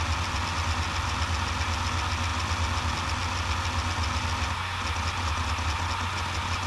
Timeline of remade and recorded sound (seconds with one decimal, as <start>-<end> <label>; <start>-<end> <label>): 0.0-6.7 recorded